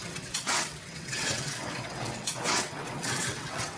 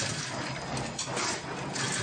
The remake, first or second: first